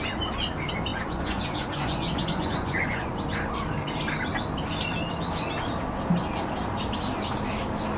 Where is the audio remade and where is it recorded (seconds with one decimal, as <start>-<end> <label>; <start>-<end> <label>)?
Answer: 0.0-0.9 recorded; 0.9-3.1 remade; 3.1-8.0 recorded